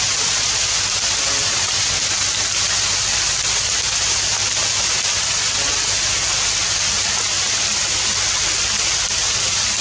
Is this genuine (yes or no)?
yes